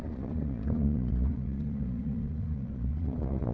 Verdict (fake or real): fake